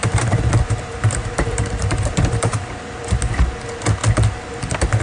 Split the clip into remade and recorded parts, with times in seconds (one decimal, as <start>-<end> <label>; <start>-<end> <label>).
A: 0.0-3.0 remade; 3.0-5.0 recorded